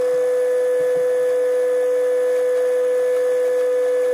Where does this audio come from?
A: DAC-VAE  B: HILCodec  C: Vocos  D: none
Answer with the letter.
D